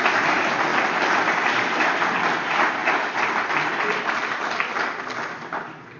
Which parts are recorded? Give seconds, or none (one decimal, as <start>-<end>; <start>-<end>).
0.7-1.3